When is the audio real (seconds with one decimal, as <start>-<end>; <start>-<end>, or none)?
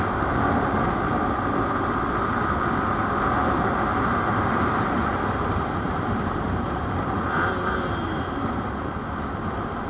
0.0-3.4; 6.9-9.9